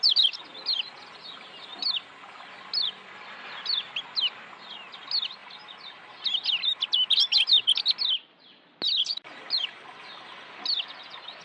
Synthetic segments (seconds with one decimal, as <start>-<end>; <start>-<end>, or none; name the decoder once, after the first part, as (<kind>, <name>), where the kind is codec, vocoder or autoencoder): 9.1-10.1 (vocoder, BigVGAN v2)